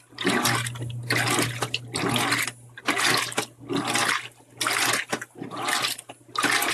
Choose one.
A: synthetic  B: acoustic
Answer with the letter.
B